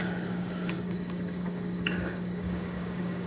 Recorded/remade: remade